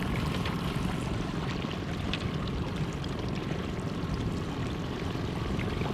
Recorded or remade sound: recorded